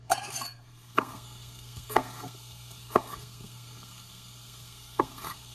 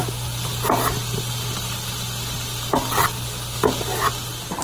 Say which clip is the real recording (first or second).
second